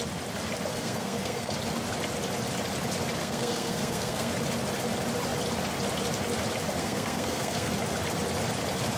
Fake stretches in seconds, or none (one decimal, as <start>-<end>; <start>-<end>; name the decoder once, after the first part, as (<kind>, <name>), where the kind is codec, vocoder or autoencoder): 0.7-1.5 (codec, SNAC); 3.2-4.3; 6.8-7.7